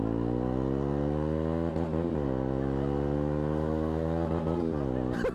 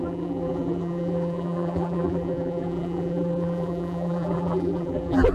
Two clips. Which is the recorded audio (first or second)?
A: first